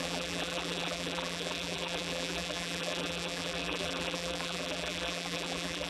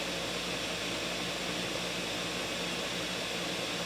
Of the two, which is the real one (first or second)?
second